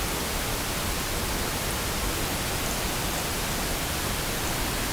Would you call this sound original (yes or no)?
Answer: yes